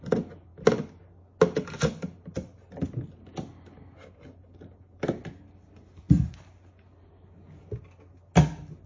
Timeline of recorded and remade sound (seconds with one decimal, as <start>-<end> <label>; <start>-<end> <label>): 0.0-8.9 recorded